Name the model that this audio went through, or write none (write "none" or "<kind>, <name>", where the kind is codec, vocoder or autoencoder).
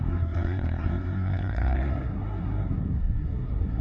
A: codec, SNAC